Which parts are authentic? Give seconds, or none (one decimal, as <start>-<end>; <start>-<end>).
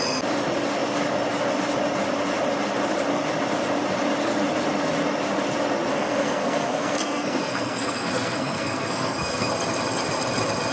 0.0-5.9; 9.5-10.7